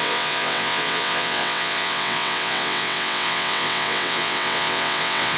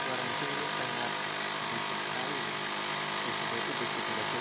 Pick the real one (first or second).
second